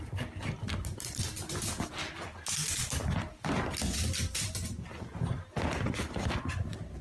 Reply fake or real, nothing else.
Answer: real